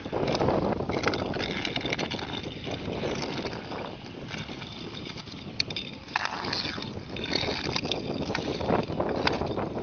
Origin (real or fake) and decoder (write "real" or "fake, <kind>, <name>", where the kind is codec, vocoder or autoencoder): real